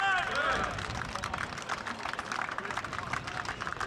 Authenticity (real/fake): real